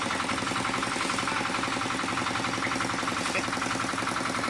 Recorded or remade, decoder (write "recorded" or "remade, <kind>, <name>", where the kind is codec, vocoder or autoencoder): recorded